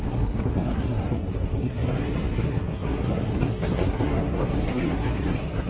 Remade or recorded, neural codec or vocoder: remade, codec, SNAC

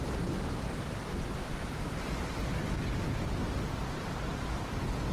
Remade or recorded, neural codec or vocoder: recorded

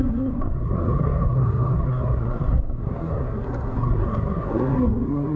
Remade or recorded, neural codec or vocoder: remade, codec, SNAC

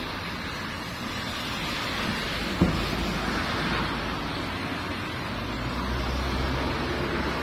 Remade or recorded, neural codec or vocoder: recorded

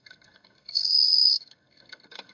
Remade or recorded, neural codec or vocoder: remade, codec, SNAC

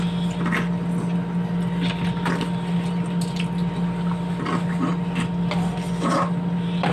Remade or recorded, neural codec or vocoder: recorded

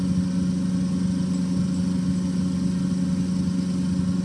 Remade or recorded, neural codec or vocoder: recorded